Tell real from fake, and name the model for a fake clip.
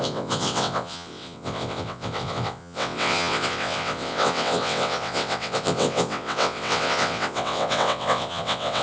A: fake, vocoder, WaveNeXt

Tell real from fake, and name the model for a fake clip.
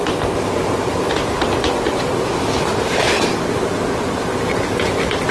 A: real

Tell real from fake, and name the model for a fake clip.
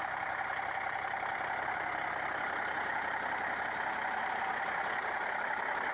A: real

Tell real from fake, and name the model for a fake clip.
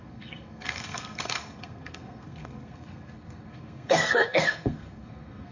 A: fake, codec, SNAC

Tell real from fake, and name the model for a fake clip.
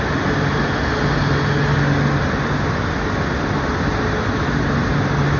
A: real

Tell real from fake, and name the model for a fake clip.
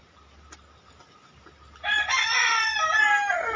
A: real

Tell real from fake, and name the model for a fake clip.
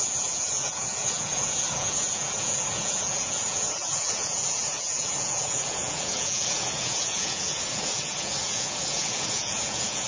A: fake, vocoder, Vocos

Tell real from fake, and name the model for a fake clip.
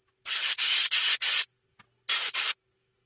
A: real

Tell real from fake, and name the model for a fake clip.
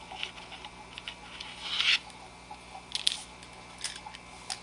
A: real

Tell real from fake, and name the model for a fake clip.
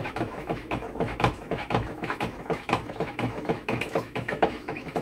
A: fake, autoencoder, DAC-VAE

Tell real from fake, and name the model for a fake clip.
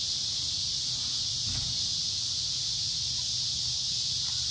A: real